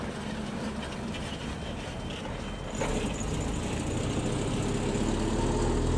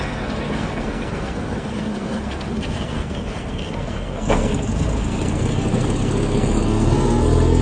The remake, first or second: second